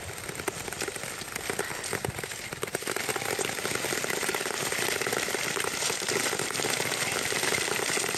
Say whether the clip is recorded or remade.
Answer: recorded